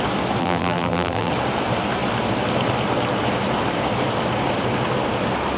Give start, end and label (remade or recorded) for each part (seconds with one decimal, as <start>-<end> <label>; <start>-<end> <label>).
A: 0.0-0.4 recorded; 0.4-1.3 remade; 1.3-5.6 recorded